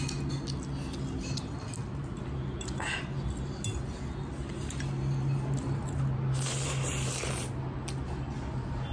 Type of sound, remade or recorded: recorded